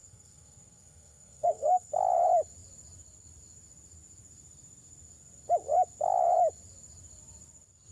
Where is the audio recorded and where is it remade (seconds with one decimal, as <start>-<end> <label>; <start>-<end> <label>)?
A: 0.0-1.9 remade; 1.9-7.9 recorded